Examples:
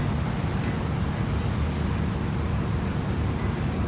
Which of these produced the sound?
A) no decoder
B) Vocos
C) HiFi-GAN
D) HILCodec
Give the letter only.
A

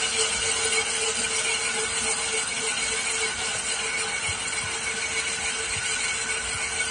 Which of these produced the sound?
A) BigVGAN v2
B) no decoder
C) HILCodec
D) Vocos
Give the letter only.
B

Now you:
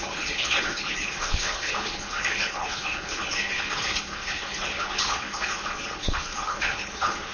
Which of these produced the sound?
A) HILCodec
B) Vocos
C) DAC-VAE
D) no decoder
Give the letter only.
A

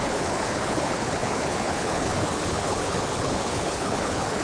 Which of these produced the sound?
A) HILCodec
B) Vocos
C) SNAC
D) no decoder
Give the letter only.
A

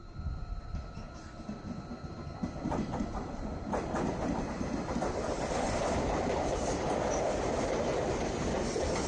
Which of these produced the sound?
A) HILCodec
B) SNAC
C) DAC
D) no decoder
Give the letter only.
D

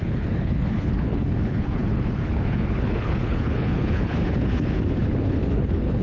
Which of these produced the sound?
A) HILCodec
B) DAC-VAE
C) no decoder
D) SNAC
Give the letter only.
A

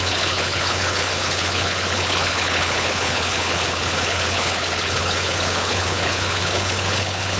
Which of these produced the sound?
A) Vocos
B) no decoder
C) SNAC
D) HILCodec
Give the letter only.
D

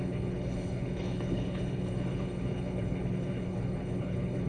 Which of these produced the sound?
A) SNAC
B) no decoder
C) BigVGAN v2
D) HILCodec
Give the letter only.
D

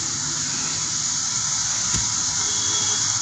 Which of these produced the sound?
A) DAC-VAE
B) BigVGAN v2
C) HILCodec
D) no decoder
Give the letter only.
D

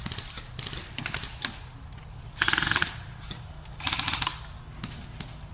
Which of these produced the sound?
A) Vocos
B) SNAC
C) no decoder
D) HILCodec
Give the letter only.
C